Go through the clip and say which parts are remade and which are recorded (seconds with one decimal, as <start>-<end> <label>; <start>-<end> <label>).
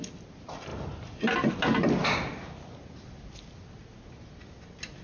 0.0-5.0 recorded